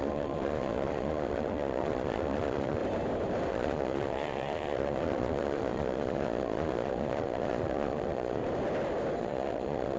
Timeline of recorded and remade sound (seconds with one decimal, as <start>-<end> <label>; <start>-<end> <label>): 0.0-2.8 remade; 2.8-3.5 recorded; 3.5-8.4 remade; 8.4-9.2 recorded; 9.2-10.0 remade